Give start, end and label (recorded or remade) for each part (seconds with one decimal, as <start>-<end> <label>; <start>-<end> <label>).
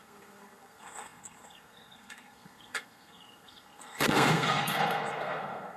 0.0-5.8 remade